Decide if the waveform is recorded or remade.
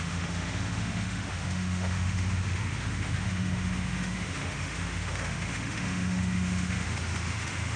remade